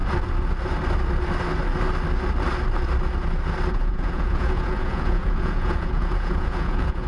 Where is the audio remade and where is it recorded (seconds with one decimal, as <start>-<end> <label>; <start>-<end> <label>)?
0.0-3.7 recorded; 3.7-7.1 remade